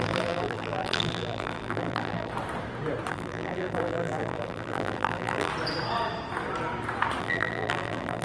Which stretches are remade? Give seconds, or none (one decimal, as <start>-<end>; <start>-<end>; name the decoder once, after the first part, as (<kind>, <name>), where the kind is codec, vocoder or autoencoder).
0.0-2.3 (vocoder, BigVGAN v2); 3.1-5.5; 7.2-8.2